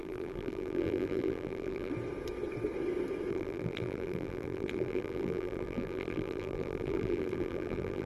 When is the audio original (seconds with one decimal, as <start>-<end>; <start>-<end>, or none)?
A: 1.9-3.3